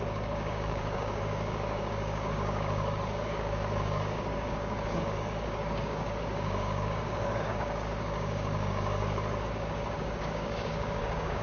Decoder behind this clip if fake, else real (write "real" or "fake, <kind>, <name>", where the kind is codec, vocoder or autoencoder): fake, codec, DAC